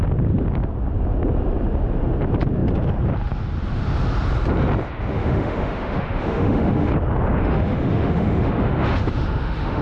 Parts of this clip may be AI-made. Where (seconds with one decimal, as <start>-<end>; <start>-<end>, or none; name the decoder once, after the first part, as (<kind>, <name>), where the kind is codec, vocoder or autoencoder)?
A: 5.1-6.9 (autoencoder, DAC-VAE); 7.4-9.8